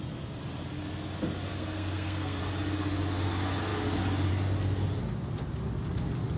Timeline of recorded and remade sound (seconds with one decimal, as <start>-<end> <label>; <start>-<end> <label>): 0.0-1.5 recorded; 1.5-2.4 remade; 2.4-6.4 recorded